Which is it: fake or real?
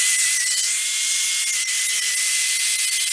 real